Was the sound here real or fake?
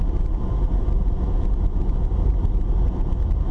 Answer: real